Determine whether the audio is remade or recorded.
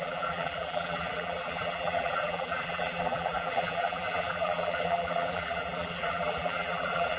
remade